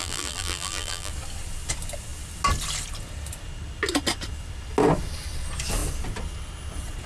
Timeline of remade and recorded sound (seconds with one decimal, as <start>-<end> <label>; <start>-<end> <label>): 0.0-1.1 remade; 1.1-7.1 recorded